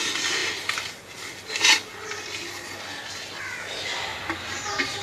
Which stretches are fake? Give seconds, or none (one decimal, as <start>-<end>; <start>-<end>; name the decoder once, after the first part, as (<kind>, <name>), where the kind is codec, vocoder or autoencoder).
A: none